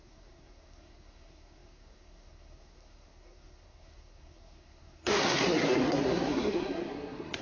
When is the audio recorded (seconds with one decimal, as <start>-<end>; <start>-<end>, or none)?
none